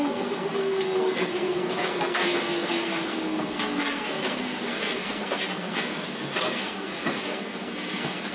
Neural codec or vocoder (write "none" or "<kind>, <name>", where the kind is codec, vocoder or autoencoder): codec, SNAC